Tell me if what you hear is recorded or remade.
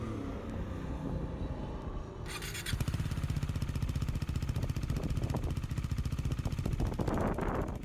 recorded